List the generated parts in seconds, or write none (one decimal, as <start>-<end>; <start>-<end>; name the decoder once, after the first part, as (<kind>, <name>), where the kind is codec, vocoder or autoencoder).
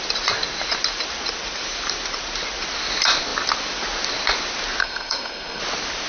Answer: 4.8-5.6 (codec, SNAC)